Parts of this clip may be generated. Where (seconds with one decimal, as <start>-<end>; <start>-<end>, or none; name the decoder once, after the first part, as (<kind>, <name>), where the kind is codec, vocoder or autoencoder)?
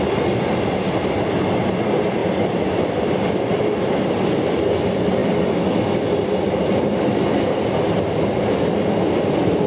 2.2-3.8 (vocoder, BigVGAN v2)